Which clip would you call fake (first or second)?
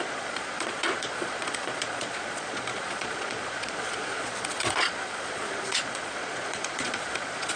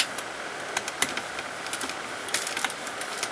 first